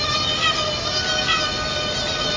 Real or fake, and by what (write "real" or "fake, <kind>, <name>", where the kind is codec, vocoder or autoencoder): real